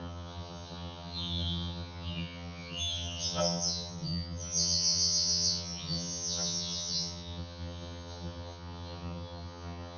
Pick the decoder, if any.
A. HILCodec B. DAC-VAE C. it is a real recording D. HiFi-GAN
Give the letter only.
D